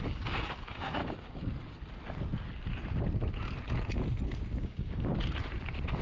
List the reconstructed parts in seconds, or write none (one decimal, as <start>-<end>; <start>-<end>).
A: 0.0-1.0; 4.6-5.1